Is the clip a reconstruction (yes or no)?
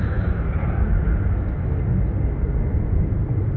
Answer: no